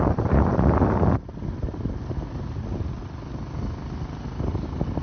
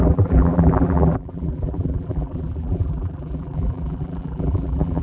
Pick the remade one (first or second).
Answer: second